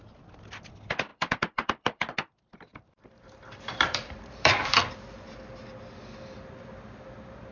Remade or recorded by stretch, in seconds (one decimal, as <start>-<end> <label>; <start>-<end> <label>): 0.0-1.1 recorded; 1.1-2.1 remade; 2.1-2.7 recorded; 2.7-4.8 remade; 4.8-7.5 recorded